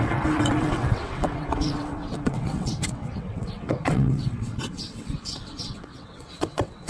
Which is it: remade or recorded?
remade